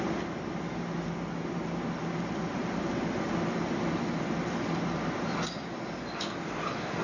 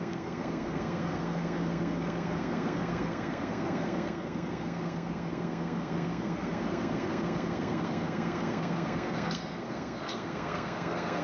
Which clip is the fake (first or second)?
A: second